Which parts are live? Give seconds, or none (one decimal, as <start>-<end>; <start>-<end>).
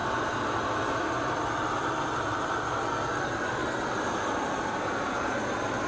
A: 0.0-5.9